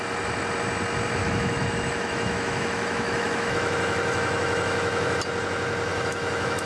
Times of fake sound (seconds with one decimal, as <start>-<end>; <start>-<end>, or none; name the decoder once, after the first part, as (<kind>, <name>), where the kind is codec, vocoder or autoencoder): 1.2-5.2 (autoencoder, DAC-VAE); 5.9-6.7